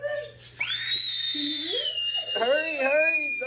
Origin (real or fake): real